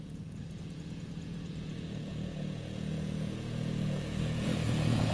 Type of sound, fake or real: fake